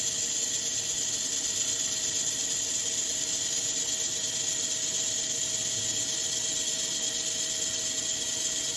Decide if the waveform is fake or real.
real